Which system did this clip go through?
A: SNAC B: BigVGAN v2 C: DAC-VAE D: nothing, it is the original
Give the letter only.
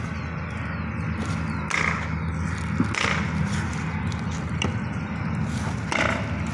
D